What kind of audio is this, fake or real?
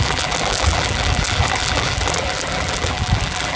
fake